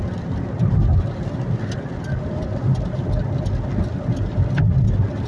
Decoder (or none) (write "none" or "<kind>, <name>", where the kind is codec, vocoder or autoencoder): none